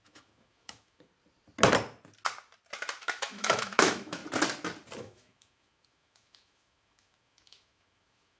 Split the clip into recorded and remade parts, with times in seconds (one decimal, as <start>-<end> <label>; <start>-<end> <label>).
0.0-1.1 remade; 1.1-3.0 recorded; 3.0-4.2 remade; 4.2-5.0 recorded; 5.0-8.4 remade

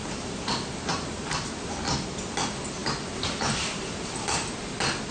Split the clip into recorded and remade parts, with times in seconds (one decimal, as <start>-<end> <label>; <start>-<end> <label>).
0.0-1.3 remade; 1.3-2.8 recorded; 2.8-4.5 remade; 4.5-5.1 recorded